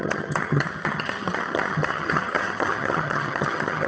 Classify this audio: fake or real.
fake